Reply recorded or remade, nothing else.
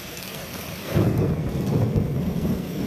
remade